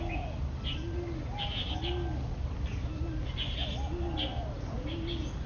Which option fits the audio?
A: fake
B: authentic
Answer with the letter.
B